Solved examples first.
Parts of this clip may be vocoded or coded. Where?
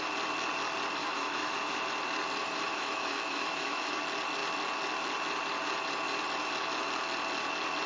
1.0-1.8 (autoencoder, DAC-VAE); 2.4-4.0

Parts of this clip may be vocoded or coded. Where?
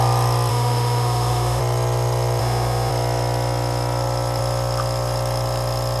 0.5-1.6 (autoencoder, DAC-VAE); 2.4-2.9